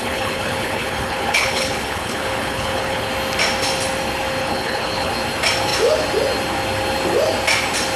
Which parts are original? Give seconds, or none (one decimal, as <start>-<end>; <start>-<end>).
3.1-4.4; 5.1-8.0